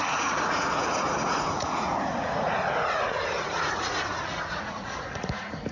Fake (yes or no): yes